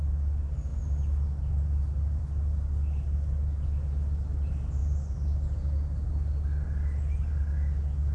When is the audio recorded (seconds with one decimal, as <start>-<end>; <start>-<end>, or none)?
0.0-8.1